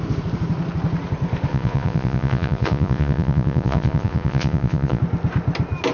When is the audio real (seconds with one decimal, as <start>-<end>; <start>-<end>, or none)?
0.0-1.5; 5.0-5.9